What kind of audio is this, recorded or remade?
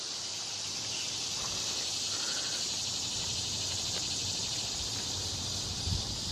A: remade